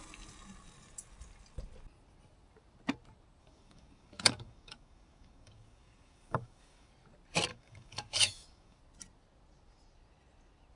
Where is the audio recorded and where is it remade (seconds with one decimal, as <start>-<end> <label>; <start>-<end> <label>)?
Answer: 0.0-3.4 recorded; 3.4-6.9 remade; 6.9-7.5 recorded; 7.5-8.8 remade; 8.8-10.8 recorded